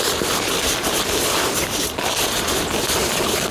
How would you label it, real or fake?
real